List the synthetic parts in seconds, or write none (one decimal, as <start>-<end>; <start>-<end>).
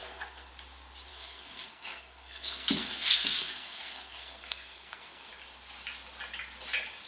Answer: 0.0-0.5; 1.1-5.3